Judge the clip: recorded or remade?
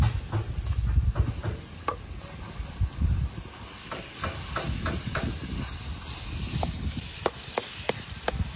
recorded